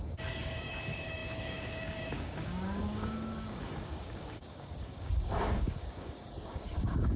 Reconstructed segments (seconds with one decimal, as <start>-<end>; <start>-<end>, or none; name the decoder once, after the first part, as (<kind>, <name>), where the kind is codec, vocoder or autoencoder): 0.0-7.2 (codec, DAC)